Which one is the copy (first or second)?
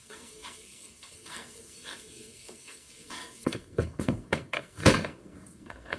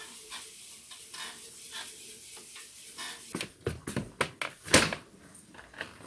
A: first